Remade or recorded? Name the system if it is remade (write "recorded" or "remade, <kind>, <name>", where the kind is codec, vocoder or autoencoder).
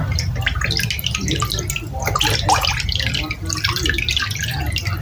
recorded